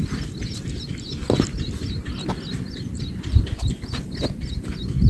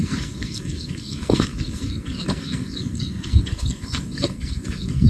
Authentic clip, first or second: first